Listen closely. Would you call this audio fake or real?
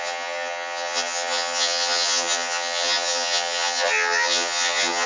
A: fake